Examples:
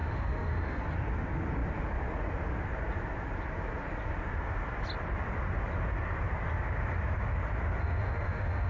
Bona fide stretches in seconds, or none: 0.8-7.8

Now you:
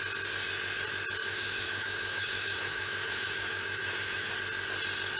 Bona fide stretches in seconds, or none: 0.0-1.2; 4.3-5.2

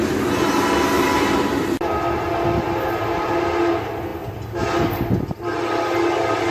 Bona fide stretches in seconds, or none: 0.0-6.5

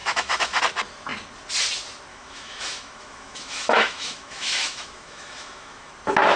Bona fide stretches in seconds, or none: 0.6-2.1; 5.9-6.4

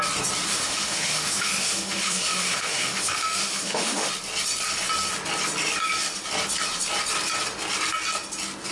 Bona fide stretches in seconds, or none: 0.0-0.5; 4.1-8.7

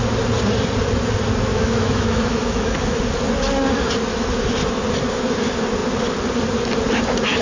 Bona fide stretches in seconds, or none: 0.0-1.5; 3.0-7.4

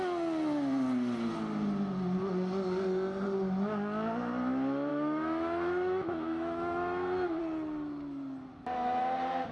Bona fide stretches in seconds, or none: 0.0-4.9; 7.4-9.5

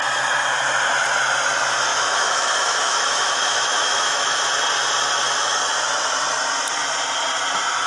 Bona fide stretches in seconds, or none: 0.0-1.9; 4.4-7.9